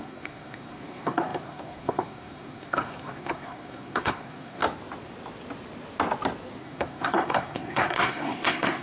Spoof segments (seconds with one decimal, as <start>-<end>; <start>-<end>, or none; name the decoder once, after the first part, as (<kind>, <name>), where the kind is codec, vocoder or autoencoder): 0.0-4.6 (codec, SNAC); 6.6-8.8